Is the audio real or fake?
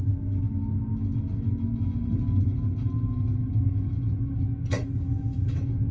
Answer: fake